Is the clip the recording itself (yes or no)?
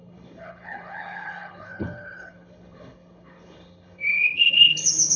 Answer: no